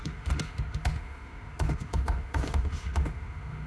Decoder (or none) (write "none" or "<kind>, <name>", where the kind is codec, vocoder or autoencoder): autoencoder, DAC-VAE